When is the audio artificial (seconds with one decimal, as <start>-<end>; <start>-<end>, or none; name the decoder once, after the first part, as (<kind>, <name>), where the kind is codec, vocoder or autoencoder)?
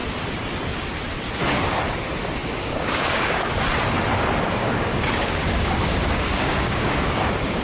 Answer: 2.4-3.5 (codec, DAC); 4.6-7.6